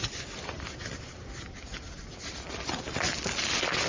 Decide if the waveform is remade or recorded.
recorded